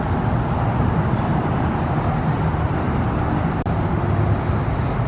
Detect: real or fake real